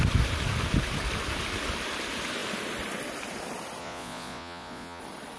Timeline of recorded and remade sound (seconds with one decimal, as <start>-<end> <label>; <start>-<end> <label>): 0.0-3.8 recorded; 3.8-5.0 remade; 5.0-5.4 recorded